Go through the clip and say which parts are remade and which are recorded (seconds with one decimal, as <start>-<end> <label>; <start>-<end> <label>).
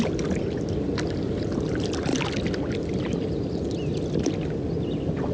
0.0-5.3 recorded